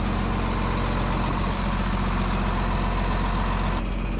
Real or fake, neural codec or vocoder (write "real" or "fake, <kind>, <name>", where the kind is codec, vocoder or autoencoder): real